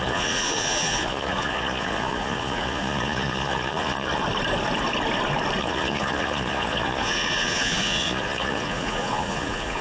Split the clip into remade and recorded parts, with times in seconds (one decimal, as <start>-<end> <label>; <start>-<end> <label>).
0.0-4.2 remade; 4.2-5.6 recorded; 5.6-9.8 remade